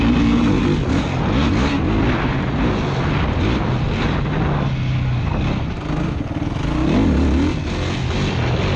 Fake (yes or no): no